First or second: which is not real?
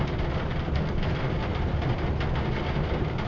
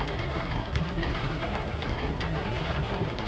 second